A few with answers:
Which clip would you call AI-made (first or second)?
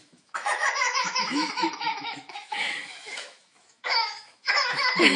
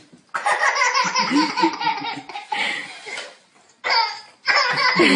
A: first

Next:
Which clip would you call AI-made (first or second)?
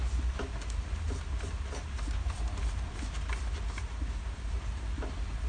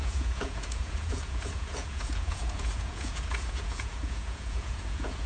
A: second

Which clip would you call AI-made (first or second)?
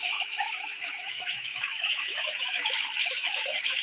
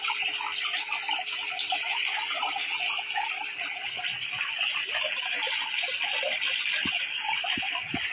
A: first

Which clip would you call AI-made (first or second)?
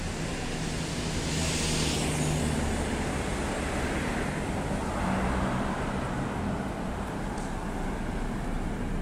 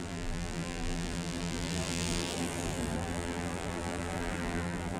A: second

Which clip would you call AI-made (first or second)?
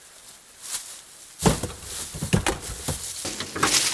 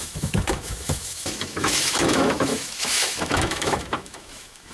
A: second